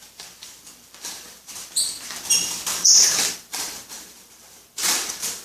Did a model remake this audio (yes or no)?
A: yes